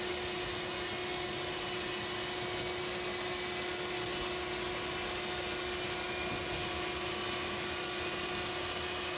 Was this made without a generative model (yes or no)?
yes